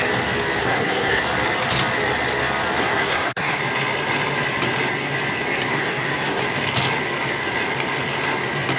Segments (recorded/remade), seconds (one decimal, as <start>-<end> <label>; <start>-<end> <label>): 0.0-0.6 recorded; 0.6-1.2 remade; 1.2-2.8 recorded; 2.8-3.6 remade; 3.6-5.7 recorded; 5.7-6.4 remade; 6.4-8.8 recorded